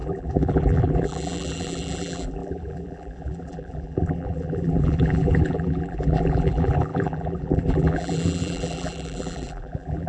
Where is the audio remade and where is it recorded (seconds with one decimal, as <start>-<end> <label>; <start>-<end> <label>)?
0.0-10.1 remade